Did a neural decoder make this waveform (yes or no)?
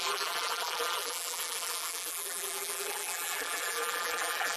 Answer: yes